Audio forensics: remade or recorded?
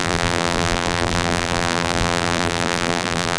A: remade